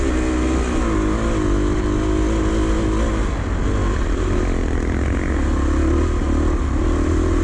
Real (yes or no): yes